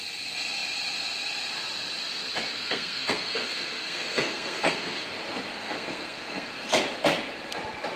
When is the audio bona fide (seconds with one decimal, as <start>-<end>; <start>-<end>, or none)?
0.0-2.5; 5.1-5.5; 6.7-8.0